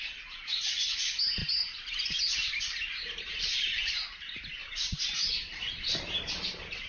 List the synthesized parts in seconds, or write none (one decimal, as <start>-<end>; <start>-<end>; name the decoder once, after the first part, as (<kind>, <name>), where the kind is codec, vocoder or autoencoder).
0.0-1.4 (vocoder, BigVGAN v2); 3.2-6.9